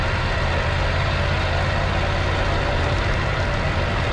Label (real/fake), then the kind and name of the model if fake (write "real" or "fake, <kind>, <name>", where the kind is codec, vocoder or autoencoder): real